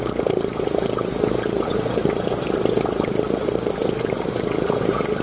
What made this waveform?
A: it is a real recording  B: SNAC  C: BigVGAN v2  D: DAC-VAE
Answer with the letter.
A